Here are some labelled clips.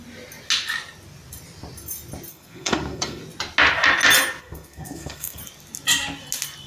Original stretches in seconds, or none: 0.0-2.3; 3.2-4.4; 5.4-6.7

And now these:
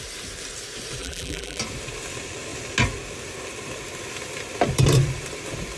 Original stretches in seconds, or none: 0.0-1.0; 1.6-5.8